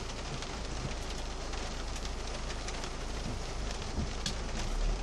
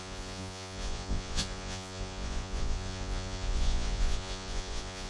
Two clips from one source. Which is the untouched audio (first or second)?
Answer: first